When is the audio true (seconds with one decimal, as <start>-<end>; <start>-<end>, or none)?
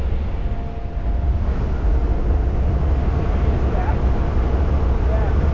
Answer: 0.0-5.5